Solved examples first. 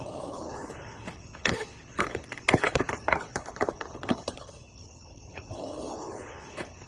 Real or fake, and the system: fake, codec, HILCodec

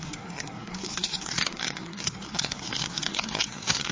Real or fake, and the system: fake, codec, SNAC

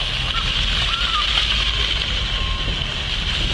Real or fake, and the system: real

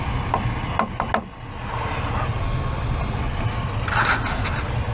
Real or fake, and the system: real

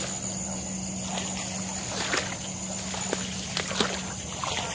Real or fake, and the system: real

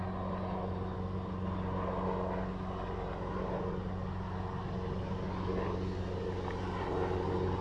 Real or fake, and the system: real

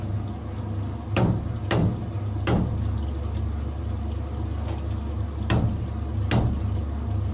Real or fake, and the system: real